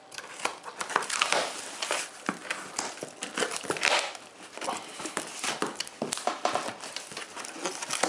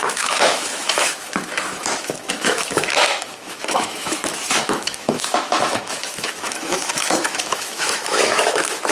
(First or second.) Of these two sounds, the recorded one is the first